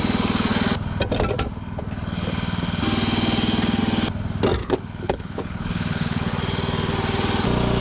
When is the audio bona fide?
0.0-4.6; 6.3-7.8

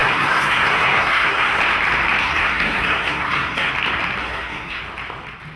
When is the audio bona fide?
1.6-2.2; 3.7-4.2; 4.8-5.6

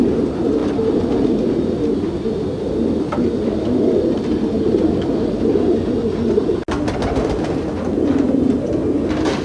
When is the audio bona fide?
0.0-9.4

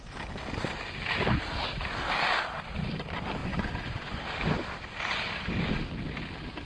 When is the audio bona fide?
0.0-3.4; 4.2-6.6

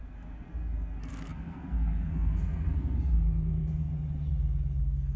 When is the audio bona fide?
3.9-4.8